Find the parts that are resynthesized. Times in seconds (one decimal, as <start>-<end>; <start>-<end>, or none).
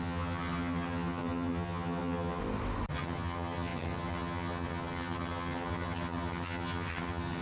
0.0-2.4; 2.9-7.4